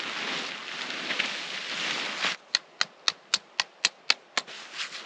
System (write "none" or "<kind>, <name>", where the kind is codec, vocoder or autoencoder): none